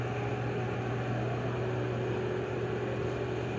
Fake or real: real